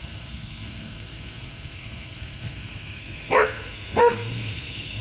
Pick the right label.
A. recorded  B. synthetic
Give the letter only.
B